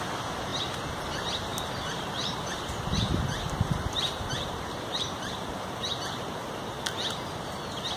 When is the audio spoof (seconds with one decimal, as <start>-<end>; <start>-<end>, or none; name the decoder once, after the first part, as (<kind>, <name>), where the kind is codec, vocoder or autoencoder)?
0.5-1.1 (vocoder, BigVGAN v2); 1.5-5.7